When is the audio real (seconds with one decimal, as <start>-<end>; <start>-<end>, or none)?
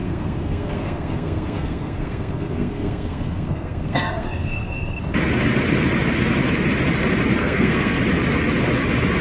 5.0-7.4; 8.0-9.2